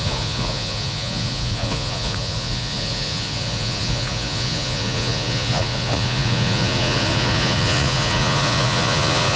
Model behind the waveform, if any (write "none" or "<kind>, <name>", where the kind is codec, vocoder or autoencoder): vocoder, Vocos